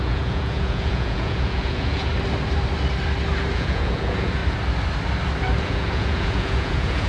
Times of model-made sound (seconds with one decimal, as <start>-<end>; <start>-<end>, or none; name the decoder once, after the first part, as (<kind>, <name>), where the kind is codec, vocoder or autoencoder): 0.0-2.1 (vocoder, Vocos); 3.5-4.4; 5.6-7.1